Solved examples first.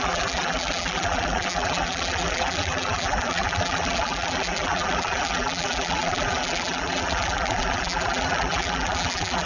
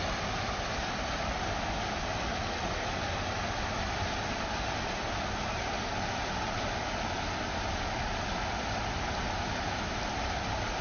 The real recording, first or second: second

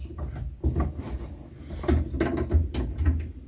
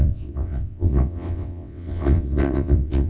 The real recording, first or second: first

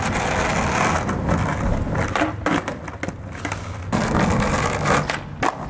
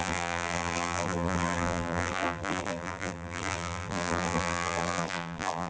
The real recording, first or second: first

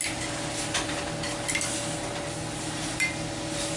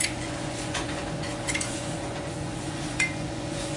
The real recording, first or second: first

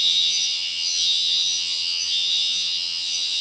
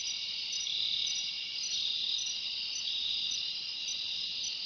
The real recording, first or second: second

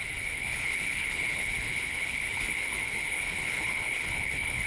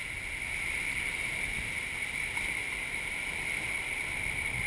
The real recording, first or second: second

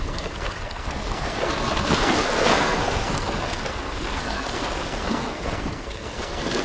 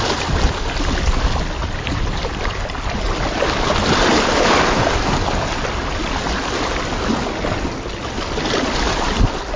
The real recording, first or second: second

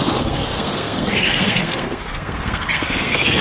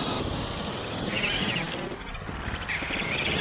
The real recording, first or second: second